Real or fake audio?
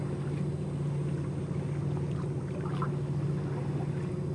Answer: real